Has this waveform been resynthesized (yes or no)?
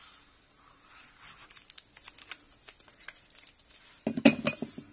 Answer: no